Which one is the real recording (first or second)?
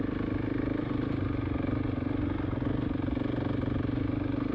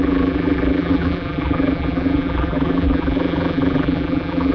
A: first